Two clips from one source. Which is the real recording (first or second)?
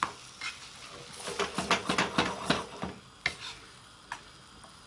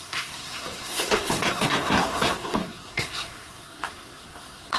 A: first